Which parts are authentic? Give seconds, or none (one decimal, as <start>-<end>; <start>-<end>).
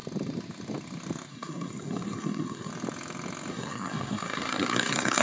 0.0-1.3; 2.7-3.5